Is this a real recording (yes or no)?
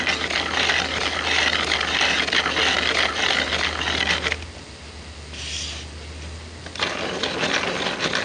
yes